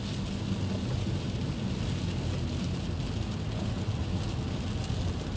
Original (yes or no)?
yes